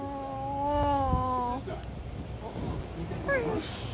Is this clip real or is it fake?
real